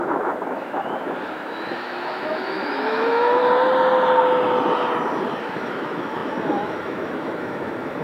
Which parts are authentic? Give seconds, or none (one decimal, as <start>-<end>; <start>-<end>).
3.4-5.4